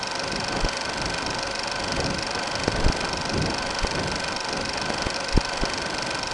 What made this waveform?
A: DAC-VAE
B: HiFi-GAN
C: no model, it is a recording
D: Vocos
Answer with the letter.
C